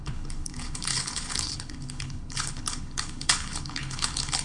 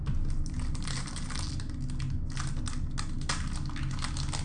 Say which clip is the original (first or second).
second